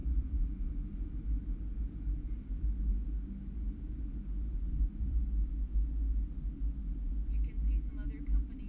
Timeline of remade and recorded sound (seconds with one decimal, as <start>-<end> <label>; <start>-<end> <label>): 0.0-5.2 remade; 5.2-8.7 recorded